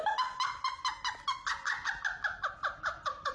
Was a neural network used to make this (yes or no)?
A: no